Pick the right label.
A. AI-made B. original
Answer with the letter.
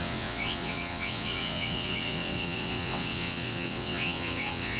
A